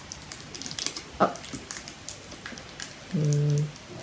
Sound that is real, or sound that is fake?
real